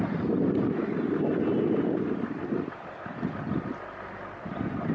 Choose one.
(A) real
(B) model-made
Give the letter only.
A